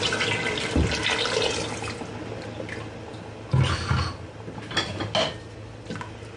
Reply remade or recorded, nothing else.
recorded